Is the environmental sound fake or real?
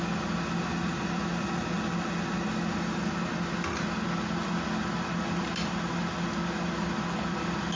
real